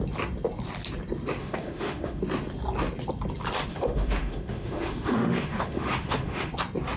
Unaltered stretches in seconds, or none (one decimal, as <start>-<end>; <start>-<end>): 0.0-1.4; 2.2-3.7; 6.5-7.0